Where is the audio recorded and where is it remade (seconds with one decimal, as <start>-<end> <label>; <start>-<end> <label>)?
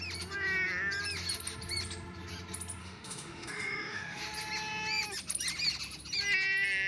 0.0-2.8 recorded; 2.8-4.2 remade; 4.2-6.9 recorded